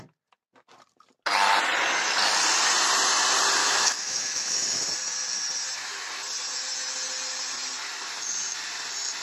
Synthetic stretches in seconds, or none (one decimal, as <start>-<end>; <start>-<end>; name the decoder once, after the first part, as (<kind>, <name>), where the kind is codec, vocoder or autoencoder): 3.6-4.8 (autoencoder, DAC-VAE)